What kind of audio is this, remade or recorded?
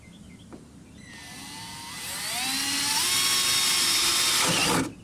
recorded